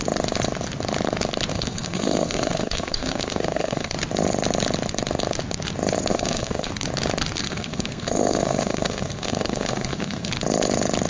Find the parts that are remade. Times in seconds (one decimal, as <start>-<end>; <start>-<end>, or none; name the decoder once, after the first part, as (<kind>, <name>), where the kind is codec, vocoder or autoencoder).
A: 1.5-3.9 (codec, SNAC); 6.1-6.7; 7.4-10.3